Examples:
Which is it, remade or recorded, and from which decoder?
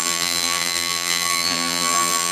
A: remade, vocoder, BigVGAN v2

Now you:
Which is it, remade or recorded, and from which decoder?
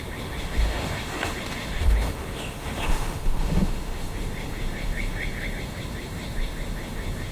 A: remade, autoencoder, DAC-VAE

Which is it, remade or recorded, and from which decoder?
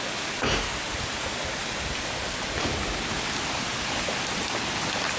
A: recorded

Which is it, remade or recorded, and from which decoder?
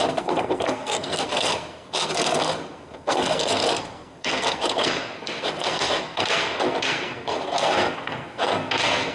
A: remade, codec, SNAC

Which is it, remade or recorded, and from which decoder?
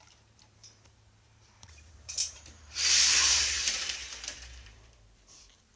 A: remade, vocoder, BigVGAN v2